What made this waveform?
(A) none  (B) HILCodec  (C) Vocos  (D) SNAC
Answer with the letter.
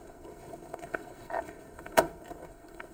D